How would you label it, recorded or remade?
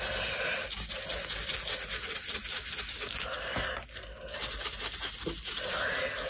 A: recorded